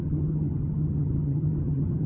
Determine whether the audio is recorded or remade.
remade